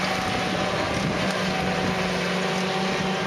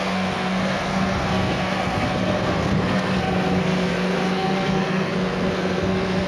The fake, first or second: second